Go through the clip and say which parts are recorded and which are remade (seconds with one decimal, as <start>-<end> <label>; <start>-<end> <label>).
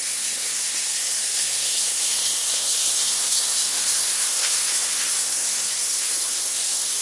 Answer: 0.0-7.0 remade